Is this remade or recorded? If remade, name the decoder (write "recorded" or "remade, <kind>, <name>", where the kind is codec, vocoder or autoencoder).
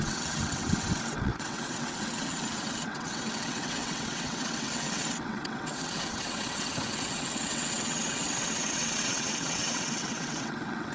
remade, vocoder, WaveNeXt